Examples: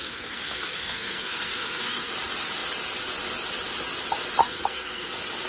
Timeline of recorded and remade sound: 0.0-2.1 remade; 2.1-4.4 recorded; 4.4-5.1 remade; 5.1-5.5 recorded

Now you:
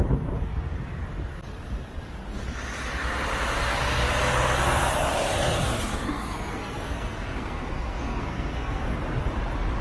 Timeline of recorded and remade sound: 0.0-5.9 recorded; 5.9-8.8 remade; 8.8-9.8 recorded

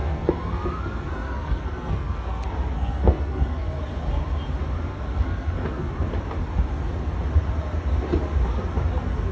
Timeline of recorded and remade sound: 0.0-3.8 remade; 3.8-4.9 recorded; 4.9-5.9 remade; 5.9-9.3 recorded

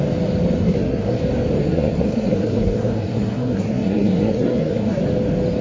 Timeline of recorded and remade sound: 0.0-0.6 recorded; 0.6-1.2 remade; 1.2-1.6 recorded; 1.6-5.0 remade; 5.0-5.6 recorded

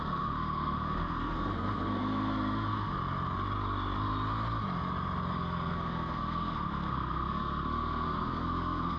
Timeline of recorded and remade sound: 0.0-2.9 remade; 2.9-5.3 recorded; 5.3-9.0 remade